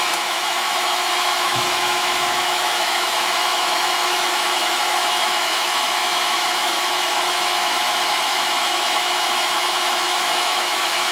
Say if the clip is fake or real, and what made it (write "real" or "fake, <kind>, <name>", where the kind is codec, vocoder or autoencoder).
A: fake, autoencoder, DAC-VAE